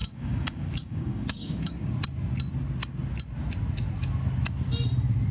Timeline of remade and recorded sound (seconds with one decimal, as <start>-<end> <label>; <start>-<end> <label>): 0.0-1.9 remade; 1.9-5.3 recorded